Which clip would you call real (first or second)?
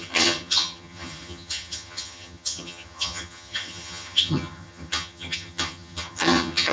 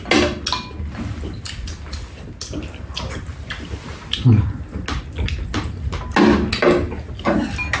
second